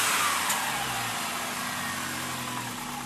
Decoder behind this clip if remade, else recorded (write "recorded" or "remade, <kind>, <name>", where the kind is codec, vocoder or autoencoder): recorded